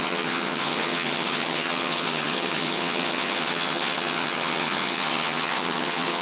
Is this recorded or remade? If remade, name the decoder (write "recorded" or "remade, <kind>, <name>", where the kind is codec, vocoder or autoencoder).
remade, vocoder, HiFi-GAN